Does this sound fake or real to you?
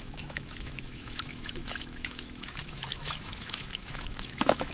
fake